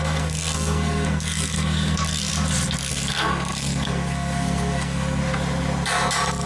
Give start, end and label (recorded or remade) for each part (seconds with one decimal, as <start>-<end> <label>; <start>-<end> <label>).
0.0-2.3 remade; 2.3-2.9 recorded; 2.9-5.2 remade; 5.2-6.5 recorded